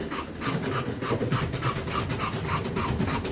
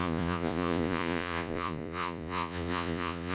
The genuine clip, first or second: first